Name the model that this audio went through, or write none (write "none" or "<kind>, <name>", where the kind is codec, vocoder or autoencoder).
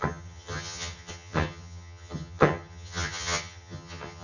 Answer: vocoder, HiFi-GAN